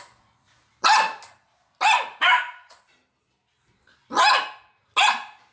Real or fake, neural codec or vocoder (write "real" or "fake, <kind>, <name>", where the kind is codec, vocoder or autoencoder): real